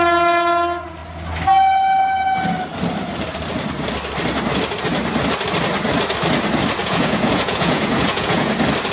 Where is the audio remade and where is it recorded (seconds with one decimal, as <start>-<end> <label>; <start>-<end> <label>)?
0.0-6.8 recorded; 6.8-8.5 remade; 8.5-8.9 recorded